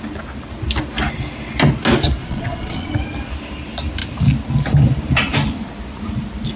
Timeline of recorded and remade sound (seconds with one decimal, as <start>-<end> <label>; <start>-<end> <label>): 0.0-2.2 recorded; 2.2-2.9 remade; 2.9-6.6 recorded